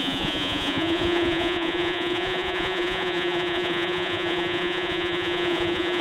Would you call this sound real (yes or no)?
no